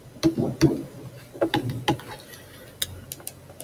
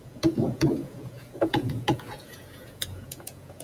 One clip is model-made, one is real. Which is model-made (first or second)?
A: second